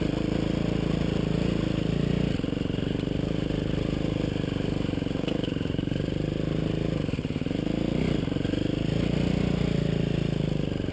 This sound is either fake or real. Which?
real